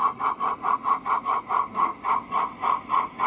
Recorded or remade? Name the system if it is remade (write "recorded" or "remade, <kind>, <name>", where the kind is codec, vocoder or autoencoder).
recorded